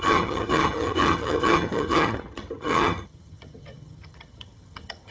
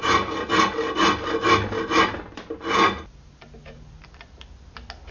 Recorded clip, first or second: second